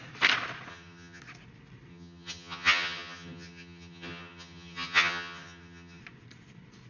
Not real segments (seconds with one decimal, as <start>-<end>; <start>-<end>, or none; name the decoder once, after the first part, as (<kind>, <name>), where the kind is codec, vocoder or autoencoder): 0.7-1.2 (vocoder, HiFi-GAN); 1.9-6.0